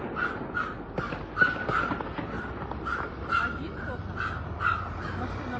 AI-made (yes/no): no